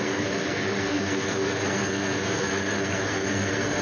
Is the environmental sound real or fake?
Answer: fake